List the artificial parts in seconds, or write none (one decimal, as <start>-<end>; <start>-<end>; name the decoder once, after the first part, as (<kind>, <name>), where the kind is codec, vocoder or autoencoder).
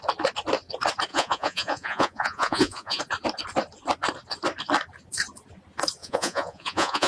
1.1-3.0 (vocoder, Vocos); 6.0-7.1